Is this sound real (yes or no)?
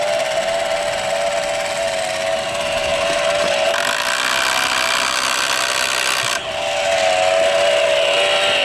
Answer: yes